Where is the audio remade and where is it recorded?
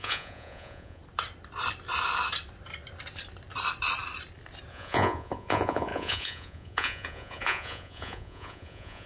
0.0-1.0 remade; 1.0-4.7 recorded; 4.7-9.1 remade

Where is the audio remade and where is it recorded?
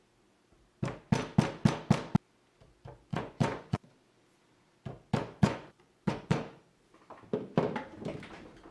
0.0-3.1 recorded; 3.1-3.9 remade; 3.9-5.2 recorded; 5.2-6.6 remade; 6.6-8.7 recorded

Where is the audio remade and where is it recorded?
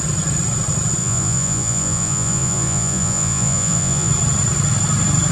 0.0-1.0 recorded; 1.0-4.1 remade; 4.1-5.3 recorded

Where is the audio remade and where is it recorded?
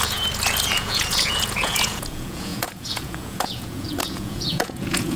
0.0-5.2 remade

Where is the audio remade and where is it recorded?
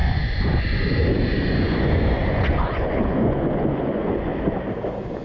0.0-1.0 remade; 1.0-1.5 recorded; 1.5-4.3 remade; 4.3-5.2 recorded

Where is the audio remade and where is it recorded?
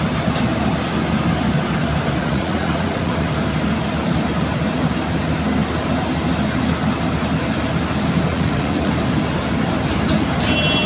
0.0-2.2 recorded; 2.2-3.3 remade; 3.3-8.3 recorded; 8.3-8.9 remade; 8.9-10.9 recorded